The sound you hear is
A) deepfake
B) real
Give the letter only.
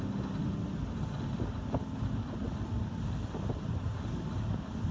B